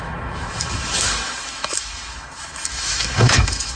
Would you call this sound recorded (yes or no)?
no